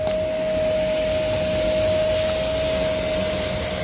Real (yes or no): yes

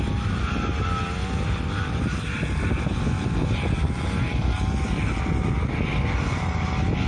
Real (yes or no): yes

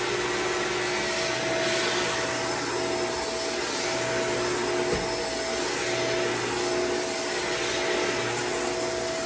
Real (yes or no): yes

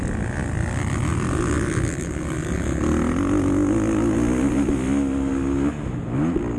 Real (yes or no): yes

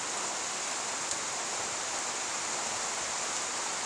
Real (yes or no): yes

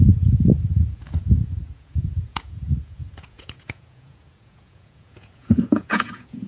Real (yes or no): no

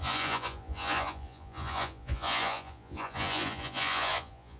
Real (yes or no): no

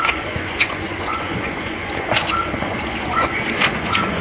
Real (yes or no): no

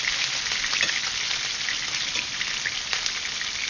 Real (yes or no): yes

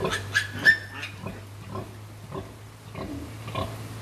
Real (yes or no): yes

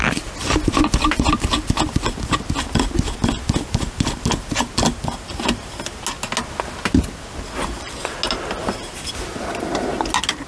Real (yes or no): yes